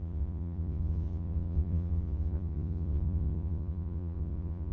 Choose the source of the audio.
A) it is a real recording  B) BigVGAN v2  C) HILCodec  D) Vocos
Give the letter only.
D